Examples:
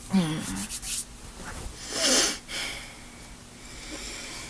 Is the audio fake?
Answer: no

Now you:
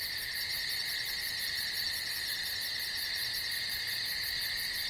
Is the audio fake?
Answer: no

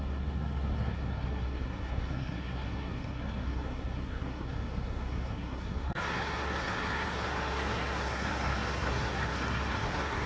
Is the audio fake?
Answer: yes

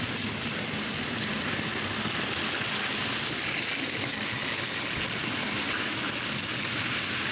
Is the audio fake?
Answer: no